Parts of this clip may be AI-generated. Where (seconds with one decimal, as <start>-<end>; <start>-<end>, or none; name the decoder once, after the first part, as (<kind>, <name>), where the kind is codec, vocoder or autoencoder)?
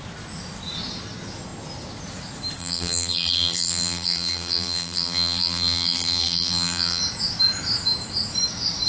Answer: 2.6-7.0 (vocoder, BigVGAN v2)